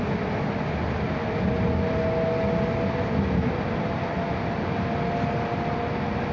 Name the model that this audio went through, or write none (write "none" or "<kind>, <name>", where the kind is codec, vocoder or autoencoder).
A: none